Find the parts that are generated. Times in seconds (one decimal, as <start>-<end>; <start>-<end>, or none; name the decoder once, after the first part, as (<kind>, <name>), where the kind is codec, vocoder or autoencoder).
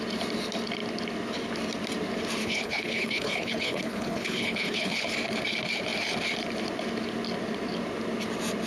2.4-5.0 (codec, HILCodec)